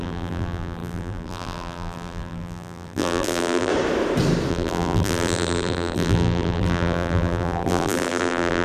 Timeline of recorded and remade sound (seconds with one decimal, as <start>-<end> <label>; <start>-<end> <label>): 0.0-3.7 remade; 3.7-4.5 recorded; 4.5-8.6 remade